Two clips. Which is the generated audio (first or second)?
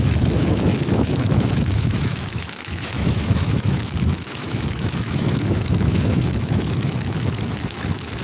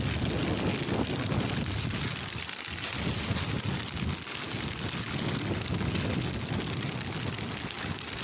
first